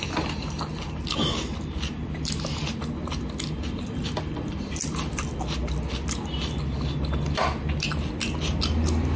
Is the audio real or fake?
real